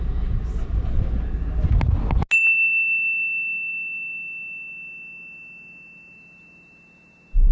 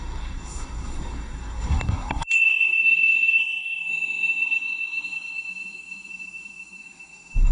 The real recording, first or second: first